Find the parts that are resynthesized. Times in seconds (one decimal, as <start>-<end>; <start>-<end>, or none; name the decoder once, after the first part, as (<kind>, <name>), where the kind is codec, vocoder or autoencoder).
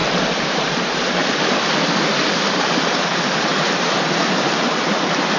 0.5-1.2 (vocoder, BigVGAN v2); 2.0-5.4